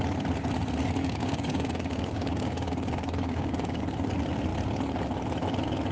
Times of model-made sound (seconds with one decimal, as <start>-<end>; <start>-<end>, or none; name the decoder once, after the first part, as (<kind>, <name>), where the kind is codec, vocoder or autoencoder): 1.0-3.8 (codec, DAC)